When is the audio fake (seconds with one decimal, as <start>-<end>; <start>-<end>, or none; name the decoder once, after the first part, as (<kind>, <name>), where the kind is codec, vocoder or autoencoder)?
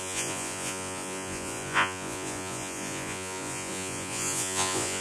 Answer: 0.0-5.0 (vocoder, Vocos)